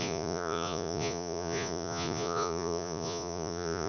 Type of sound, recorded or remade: remade